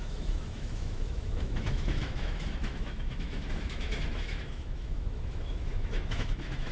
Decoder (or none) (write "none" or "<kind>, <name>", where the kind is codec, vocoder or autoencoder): autoencoder, DAC-VAE